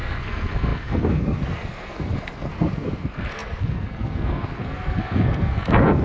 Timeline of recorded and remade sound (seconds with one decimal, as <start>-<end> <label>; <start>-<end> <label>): 0.0-6.0 remade